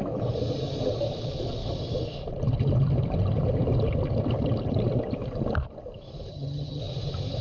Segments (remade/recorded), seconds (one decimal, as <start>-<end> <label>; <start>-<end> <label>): 0.0-6.3 recorded; 6.3-6.8 remade; 6.8-7.4 recorded